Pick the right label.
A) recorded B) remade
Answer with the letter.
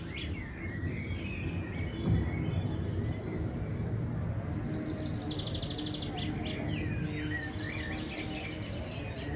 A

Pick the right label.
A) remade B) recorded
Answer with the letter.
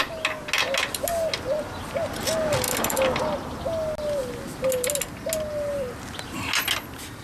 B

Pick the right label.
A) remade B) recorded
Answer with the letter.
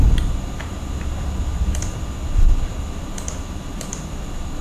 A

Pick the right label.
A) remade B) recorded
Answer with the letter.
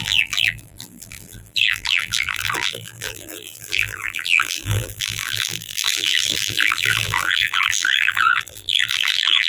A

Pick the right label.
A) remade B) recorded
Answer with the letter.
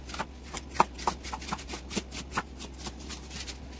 B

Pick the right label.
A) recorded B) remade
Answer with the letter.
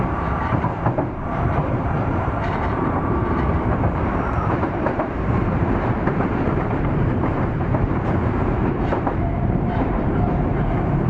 B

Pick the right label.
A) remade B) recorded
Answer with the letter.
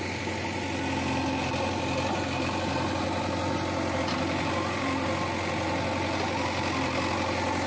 B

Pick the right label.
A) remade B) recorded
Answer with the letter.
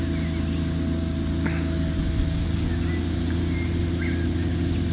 B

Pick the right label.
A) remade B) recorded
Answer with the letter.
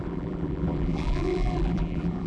A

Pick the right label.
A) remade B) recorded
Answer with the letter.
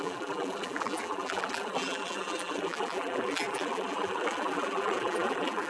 A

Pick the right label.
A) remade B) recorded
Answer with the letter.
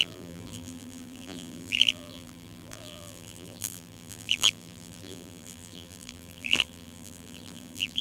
A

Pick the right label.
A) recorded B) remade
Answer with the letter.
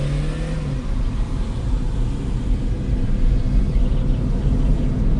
A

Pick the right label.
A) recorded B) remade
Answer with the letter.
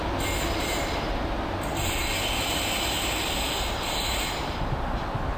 A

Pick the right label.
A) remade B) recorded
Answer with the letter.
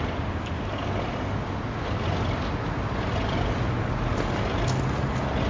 B